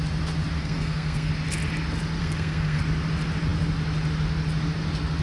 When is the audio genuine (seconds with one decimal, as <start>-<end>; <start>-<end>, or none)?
0.0-0.6; 1.3-2.2; 2.8-5.2